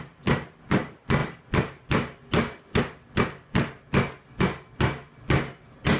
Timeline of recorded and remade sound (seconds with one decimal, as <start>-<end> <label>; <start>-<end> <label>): 0.0-6.0 recorded